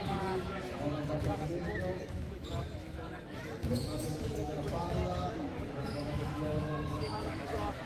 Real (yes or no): no